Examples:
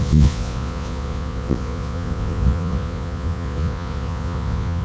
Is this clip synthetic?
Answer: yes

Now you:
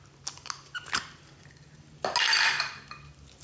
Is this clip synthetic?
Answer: no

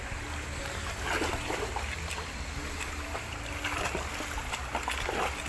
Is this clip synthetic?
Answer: no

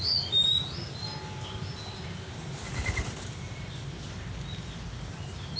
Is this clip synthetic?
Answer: no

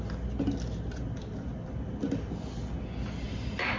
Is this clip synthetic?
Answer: no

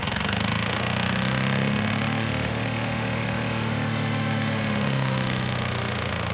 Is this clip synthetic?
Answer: yes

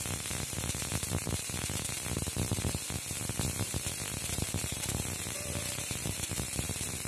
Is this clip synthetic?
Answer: yes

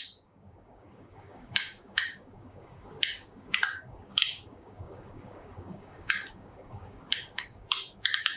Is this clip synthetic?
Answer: yes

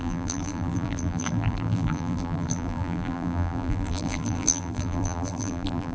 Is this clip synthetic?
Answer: yes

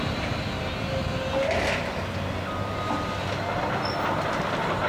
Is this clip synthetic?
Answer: no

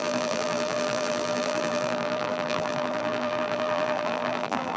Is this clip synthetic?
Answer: yes